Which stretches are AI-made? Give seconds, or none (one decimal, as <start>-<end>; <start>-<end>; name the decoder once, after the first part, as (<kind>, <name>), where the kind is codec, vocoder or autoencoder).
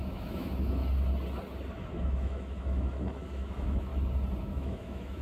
0.0-0.8 (autoencoder, DAC-VAE); 1.7-3.9; 4.4-5.2